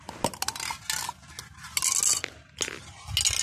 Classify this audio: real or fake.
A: real